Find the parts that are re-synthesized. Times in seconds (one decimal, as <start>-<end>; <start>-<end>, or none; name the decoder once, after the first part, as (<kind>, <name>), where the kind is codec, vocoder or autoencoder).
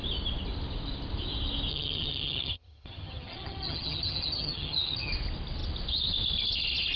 1.7-5.1 (vocoder, HiFi-GAN)